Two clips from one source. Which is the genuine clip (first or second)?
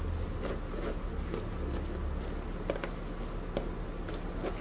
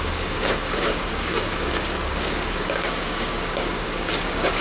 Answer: first